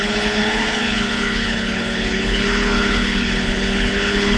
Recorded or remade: remade